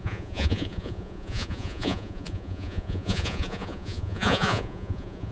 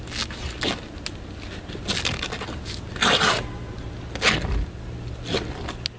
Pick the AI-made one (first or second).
first